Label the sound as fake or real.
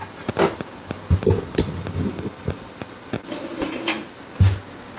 real